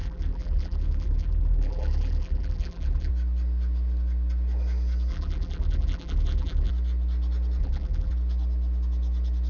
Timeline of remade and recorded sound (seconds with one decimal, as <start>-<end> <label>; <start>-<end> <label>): 0.0-3.1 remade; 3.1-5.1 recorded; 5.1-6.7 remade; 6.7-7.6 recorded; 7.6-8.1 remade; 8.1-9.5 recorded